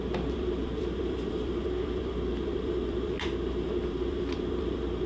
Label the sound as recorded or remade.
remade